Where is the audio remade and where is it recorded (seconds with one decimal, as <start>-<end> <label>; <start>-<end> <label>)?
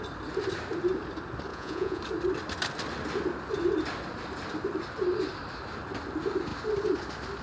0.0-1.5 recorded; 1.5-2.0 remade; 2.0-7.4 recorded